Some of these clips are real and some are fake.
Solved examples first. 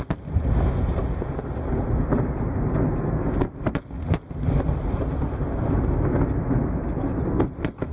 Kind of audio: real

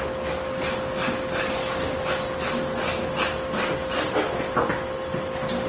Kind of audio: real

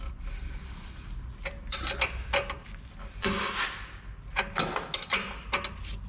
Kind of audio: real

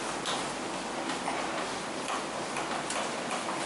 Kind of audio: real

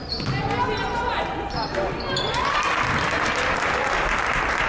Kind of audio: real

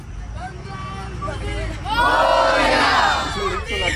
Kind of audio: real